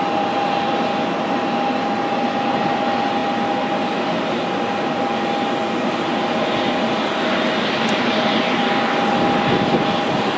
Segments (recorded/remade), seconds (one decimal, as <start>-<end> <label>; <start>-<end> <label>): 0.0-10.4 recorded